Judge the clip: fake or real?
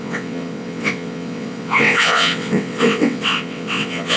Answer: fake